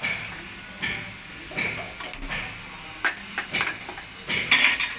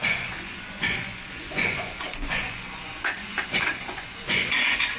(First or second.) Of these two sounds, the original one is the first